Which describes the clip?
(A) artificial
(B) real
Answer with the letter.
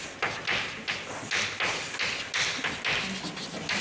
B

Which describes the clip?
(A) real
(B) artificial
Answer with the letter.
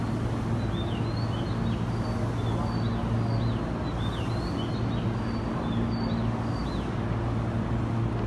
A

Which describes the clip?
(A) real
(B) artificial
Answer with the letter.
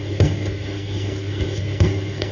B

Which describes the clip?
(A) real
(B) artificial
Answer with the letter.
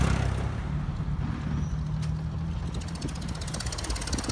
A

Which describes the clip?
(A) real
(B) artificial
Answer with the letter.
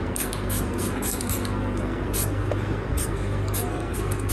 B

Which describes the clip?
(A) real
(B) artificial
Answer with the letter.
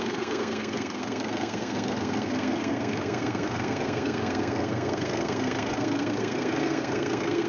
B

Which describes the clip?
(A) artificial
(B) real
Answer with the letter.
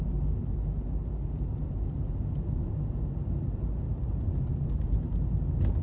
B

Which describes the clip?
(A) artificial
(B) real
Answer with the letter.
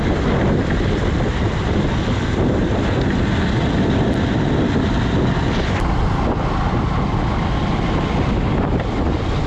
B